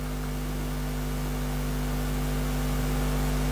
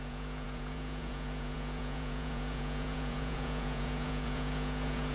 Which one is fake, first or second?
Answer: second